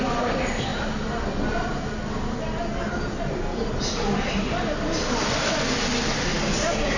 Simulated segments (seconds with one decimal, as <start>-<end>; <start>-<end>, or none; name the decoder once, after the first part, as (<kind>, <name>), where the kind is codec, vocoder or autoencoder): none

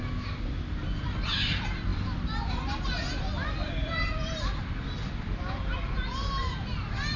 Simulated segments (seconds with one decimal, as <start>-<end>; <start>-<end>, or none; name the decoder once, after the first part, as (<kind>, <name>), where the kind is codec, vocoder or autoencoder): none

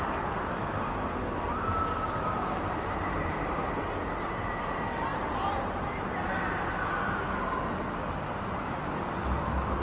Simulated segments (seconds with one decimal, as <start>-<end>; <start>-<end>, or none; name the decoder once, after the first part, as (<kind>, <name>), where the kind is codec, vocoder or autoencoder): 0.6-3.7 (vocoder, BigVGAN v2)

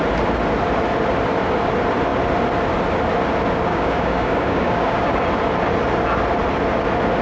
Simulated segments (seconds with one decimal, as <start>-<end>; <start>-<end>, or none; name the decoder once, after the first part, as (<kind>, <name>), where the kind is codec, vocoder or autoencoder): 3.7-5.1 (codec, DAC)